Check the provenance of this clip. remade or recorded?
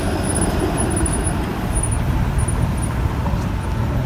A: remade